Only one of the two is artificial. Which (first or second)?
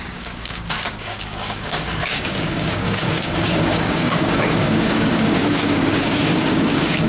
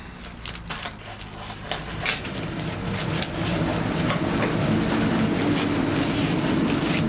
first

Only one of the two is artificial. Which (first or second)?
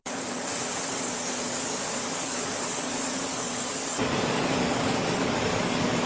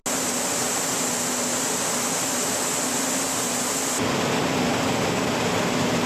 first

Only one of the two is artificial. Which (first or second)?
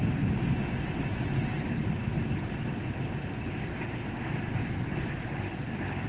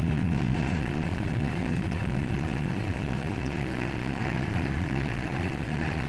second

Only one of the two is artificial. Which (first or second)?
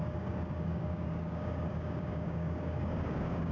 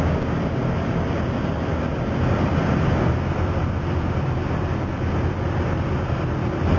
first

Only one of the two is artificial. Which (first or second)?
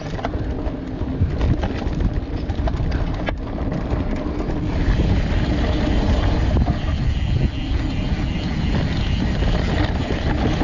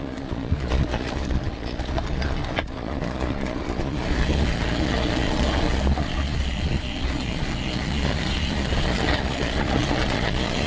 second